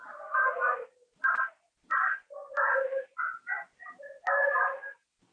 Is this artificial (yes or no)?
no